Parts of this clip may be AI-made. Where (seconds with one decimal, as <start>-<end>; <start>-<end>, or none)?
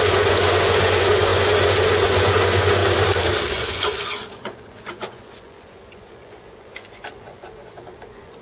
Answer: 0.0-2.8; 3.5-8.4